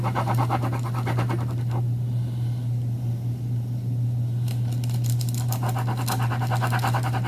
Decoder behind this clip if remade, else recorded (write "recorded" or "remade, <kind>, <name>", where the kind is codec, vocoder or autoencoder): recorded